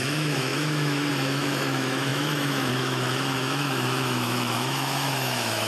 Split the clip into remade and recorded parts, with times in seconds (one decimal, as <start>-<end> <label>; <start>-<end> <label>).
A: 0.0-5.7 remade